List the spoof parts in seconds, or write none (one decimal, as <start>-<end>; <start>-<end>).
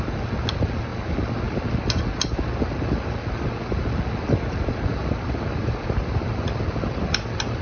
none